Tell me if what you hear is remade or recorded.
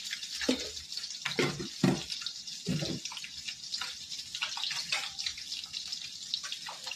recorded